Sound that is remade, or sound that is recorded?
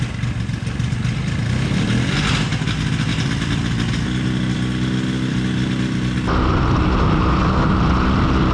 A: recorded